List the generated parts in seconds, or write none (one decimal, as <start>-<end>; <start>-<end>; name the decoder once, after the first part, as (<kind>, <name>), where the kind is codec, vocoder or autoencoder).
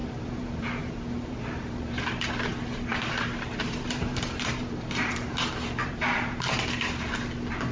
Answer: 0.0-2.3 (vocoder, BigVGAN v2); 2.9-5.5